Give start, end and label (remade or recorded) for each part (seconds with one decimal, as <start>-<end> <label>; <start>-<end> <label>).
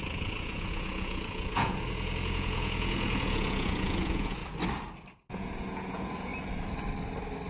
0.0-4.4 remade; 4.4-5.3 recorded; 5.3-6.3 remade; 6.3-7.5 recorded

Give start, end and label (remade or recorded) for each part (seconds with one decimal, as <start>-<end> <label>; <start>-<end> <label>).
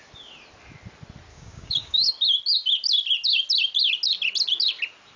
0.0-1.3 recorded; 1.3-2.1 remade; 2.1-5.2 recorded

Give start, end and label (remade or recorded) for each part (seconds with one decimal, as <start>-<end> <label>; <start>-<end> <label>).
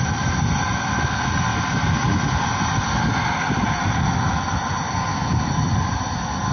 0.0-6.5 recorded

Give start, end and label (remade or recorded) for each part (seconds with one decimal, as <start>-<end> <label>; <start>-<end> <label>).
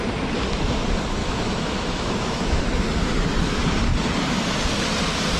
0.0-1.2 recorded; 1.2-2.6 remade; 2.6-5.4 recorded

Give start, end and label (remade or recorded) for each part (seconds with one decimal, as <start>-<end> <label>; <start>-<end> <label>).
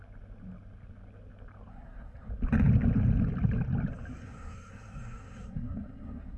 0.0-1.7 recorded; 1.7-2.3 remade; 2.3-4.2 recorded; 4.2-6.4 remade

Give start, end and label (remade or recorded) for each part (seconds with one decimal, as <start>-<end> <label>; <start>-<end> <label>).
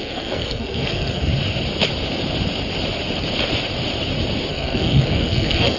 0.0-1.3 remade; 1.3-4.5 recorded; 4.5-5.8 remade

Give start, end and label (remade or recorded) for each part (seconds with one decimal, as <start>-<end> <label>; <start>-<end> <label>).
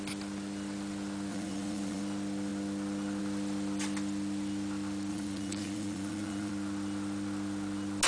0.0-1.3 recorded; 1.3-2.0 remade; 2.0-5.1 recorded; 5.1-6.5 remade; 6.5-8.1 recorded